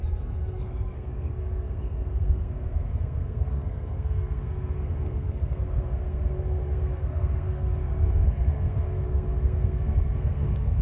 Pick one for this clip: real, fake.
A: fake